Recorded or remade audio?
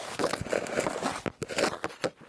recorded